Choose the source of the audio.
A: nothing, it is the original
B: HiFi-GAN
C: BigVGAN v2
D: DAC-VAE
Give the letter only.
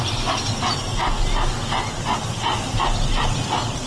A